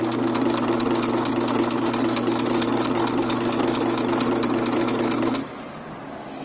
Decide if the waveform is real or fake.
real